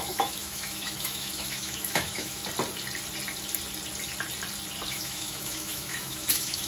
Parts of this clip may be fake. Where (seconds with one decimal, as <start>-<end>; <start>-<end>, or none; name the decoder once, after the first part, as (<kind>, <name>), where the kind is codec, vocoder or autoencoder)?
0.0-2.4 (autoencoder, DAC-VAE); 4.9-6.7